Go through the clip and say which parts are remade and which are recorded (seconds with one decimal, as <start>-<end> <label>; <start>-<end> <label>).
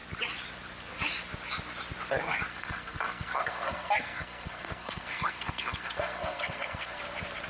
0.0-2.5 recorded; 2.5-7.0 remade; 7.0-7.5 recorded